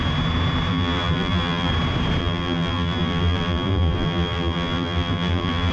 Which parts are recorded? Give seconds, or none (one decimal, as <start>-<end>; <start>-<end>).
0.0-0.7; 1.7-2.2